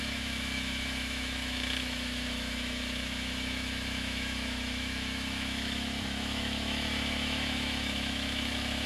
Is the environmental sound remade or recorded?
remade